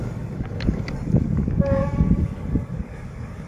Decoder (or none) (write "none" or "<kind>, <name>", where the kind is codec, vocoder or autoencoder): codec, DAC